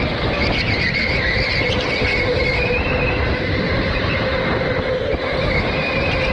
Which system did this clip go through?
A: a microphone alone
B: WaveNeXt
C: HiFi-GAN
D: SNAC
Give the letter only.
A